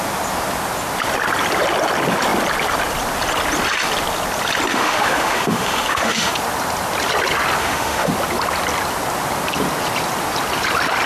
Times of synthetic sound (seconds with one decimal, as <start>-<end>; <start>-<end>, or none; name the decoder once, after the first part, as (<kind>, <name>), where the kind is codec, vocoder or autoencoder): 4.7-6.3 (autoencoder, DAC-VAE); 7.6-8.1

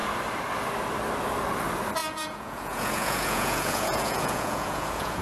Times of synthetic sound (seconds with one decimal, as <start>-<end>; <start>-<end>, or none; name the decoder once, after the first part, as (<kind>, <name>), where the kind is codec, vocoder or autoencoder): 2.0-5.2 (vocoder, Vocos)

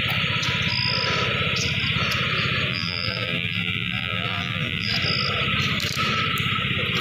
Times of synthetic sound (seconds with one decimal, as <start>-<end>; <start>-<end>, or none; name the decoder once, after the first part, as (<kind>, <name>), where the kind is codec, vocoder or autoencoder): 2.7-4.9 (vocoder, BigVGAN v2)

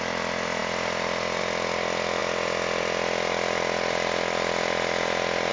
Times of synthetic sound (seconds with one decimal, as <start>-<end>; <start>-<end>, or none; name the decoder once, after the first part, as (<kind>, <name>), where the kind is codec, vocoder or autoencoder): none

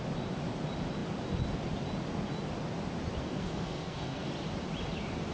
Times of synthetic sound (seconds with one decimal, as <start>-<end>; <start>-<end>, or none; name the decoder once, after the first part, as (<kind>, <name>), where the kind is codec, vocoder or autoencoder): 3.2-4.3 (codec, SNAC)